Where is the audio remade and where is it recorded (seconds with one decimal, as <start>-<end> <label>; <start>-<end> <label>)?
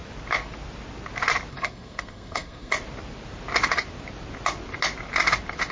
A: 0.0-1.5 recorded; 1.5-2.7 remade; 2.7-5.7 recorded